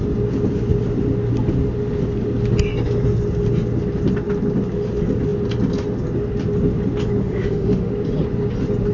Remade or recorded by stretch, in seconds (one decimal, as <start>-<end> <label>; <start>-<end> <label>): 0.0-7.2 recorded; 7.2-7.9 remade; 7.9-8.9 recorded